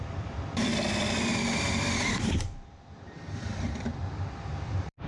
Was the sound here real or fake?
fake